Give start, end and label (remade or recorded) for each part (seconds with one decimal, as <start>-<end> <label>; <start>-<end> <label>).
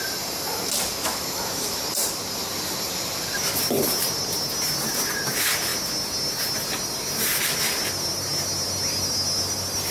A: 0.0-1.0 recorded; 1.0-1.8 remade; 1.8-9.9 recorded